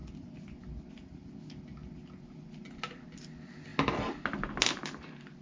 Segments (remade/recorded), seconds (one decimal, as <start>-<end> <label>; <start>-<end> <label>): 0.0-5.4 recorded